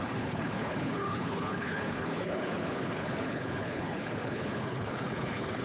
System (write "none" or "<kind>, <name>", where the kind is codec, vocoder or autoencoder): codec, HILCodec